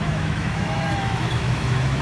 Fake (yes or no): yes